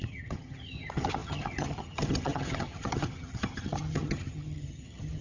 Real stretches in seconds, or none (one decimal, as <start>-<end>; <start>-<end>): none

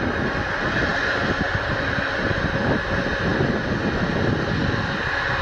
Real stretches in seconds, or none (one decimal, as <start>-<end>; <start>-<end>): 0.0-5.4

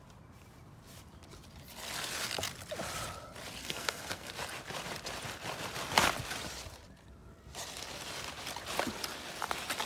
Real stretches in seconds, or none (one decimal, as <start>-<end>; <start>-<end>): 0.0-3.6; 4.3-9.9

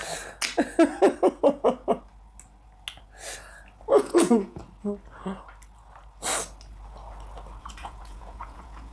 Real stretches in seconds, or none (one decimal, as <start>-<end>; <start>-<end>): 0.0-4.0; 4.6-7.6

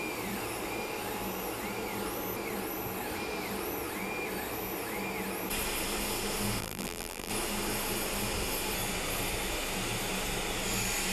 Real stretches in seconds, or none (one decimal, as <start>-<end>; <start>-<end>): 0.0-6.6; 7.3-11.1

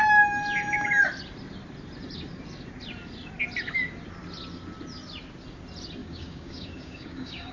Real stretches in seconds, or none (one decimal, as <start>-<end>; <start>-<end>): 0.0-6.0

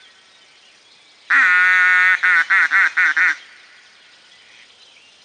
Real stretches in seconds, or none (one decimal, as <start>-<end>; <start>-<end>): 0.0-3.3; 4.1-5.2

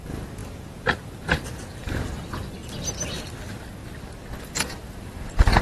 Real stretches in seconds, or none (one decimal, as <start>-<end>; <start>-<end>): 2.6-3.3; 3.8-5.0